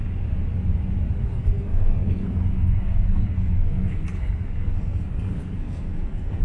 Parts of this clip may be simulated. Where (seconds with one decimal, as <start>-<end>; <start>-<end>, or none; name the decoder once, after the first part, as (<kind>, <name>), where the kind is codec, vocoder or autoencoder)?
1.2-6.4 (codec, SNAC)